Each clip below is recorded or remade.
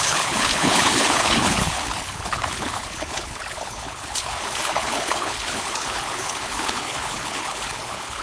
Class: remade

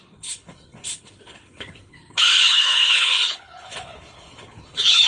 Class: remade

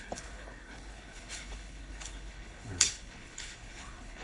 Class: remade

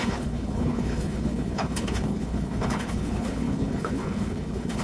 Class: remade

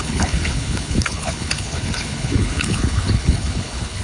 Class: remade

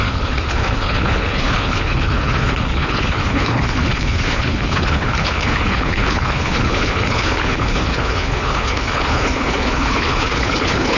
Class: remade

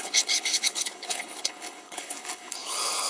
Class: remade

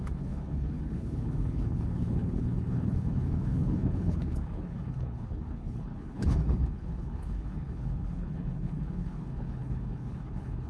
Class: remade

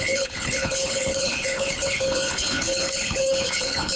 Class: remade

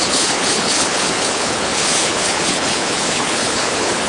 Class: remade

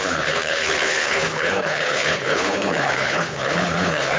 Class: remade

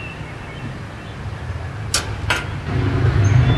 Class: recorded